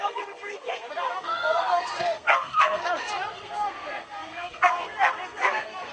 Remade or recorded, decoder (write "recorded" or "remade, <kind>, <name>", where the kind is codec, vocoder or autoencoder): remade, codec, SNAC